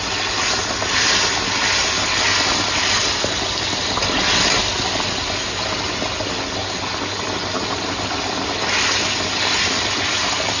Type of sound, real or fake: real